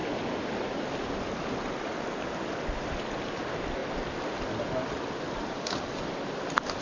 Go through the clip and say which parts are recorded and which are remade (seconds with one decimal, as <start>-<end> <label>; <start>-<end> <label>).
0.0-6.8 recorded